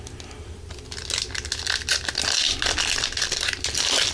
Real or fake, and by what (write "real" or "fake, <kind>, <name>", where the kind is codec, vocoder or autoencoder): real